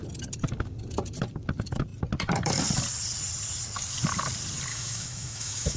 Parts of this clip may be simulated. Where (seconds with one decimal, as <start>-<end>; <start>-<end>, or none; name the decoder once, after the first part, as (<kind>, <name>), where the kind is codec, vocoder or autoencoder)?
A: 4.7-5.8 (autoencoder, DAC-VAE)